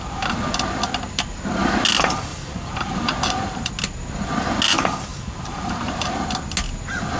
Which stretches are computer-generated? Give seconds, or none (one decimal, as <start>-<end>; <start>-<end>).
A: 2.3-3.7; 5.1-6.1